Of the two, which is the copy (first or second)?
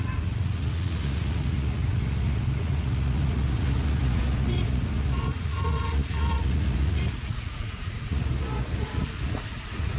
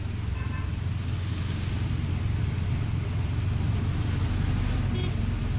first